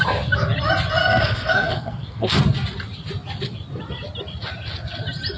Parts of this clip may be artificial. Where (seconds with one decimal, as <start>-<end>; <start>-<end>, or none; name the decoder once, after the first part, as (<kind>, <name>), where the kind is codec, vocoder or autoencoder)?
1.0-2.4 (codec, SNAC)